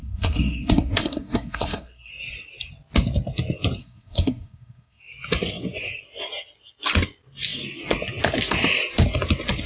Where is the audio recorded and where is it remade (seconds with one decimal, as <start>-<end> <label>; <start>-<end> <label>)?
0.0-2.1 remade; 2.1-3.8 recorded; 3.8-5.0 remade; 5.0-9.7 recorded